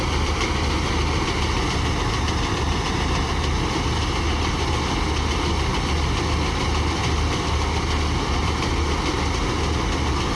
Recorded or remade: recorded